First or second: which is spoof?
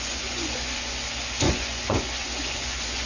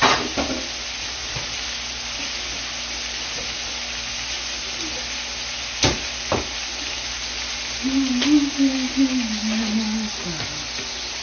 first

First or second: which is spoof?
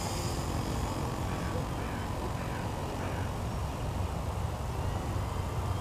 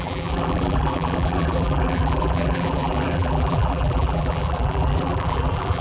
second